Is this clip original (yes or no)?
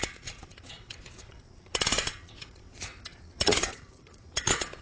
no